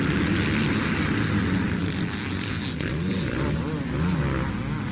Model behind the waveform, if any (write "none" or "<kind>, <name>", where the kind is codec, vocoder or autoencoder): none